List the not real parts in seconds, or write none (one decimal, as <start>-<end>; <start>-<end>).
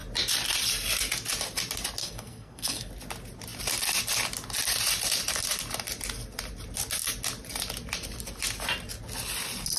2.0-2.9